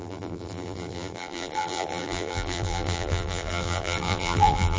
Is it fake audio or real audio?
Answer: fake